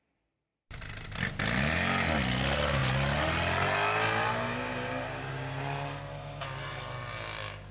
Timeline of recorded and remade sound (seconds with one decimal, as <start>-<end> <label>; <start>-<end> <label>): 0.0-7.7 recorded